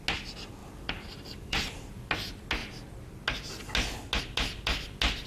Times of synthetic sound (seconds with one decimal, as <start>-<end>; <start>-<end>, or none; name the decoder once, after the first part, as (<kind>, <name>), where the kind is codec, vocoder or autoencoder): 0.6-2.1 (vocoder, BigVGAN v2)